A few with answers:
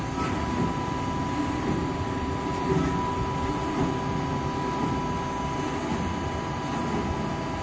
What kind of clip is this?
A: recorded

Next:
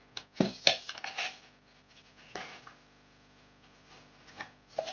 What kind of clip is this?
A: recorded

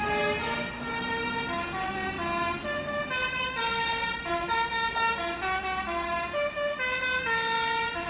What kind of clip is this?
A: recorded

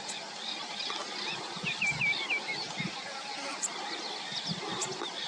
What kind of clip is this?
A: recorded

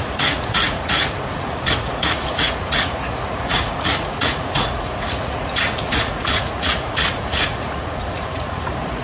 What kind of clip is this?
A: remade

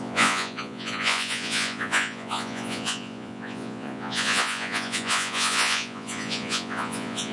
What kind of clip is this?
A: remade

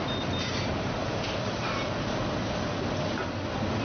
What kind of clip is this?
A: recorded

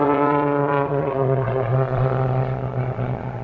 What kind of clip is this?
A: remade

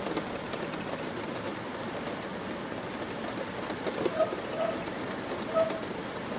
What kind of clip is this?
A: recorded